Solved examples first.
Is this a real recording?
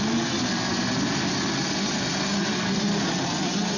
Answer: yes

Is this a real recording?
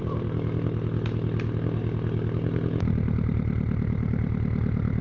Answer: yes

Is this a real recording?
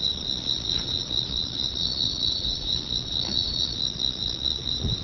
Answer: no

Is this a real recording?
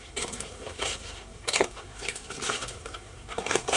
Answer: no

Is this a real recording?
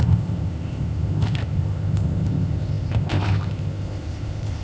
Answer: no